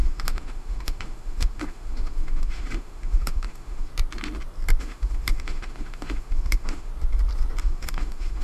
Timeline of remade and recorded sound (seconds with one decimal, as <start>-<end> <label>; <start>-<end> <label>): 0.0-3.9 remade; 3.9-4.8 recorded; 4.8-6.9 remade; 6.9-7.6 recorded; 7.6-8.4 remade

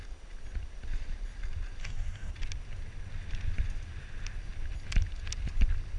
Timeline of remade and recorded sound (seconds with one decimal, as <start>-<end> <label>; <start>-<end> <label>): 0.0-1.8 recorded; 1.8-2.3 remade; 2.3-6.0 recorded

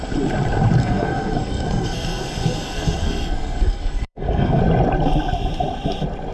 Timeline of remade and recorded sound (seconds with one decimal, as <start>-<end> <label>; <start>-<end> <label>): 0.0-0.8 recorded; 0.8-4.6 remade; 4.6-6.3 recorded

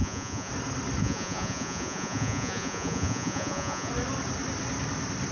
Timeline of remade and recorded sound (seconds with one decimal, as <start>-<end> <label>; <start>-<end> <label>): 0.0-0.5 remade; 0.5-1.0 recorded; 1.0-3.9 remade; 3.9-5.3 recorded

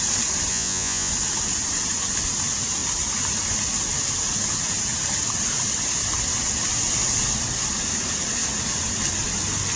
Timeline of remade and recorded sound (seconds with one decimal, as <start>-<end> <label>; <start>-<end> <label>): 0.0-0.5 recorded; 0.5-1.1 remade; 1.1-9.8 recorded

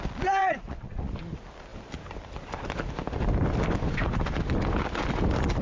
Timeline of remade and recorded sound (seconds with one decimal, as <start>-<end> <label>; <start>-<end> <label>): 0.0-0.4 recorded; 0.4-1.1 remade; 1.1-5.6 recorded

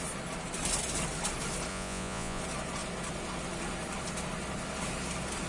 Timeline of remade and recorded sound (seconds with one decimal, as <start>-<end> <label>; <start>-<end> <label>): 0.0-1.7 recorded; 1.7-2.4 remade; 2.4-5.5 recorded

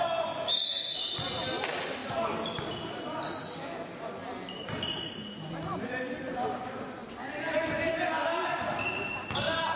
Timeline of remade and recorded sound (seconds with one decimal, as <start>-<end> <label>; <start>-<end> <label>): 0.0-9.8 recorded